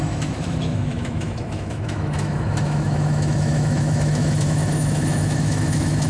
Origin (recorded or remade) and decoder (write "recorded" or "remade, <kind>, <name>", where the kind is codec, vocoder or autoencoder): remade, autoencoder, DAC-VAE